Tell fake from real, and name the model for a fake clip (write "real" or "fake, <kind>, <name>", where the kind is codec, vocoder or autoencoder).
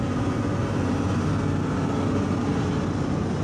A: real